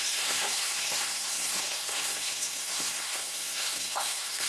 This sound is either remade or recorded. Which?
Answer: remade